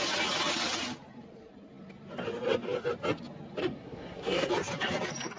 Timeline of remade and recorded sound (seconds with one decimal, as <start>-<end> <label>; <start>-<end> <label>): 0.0-3.6 recorded; 3.6-4.5 remade; 4.5-5.4 recorded